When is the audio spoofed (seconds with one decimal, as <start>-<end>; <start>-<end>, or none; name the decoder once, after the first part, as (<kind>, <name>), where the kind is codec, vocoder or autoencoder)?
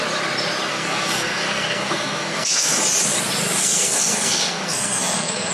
0.7-2.8 (codec, SNAC); 3.6-5.5